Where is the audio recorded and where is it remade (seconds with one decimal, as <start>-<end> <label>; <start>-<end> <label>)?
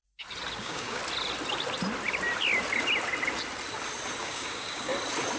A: 0.0-0.6 recorded; 0.6-1.0 remade; 1.0-4.2 recorded; 4.2-4.9 remade; 4.9-5.4 recorded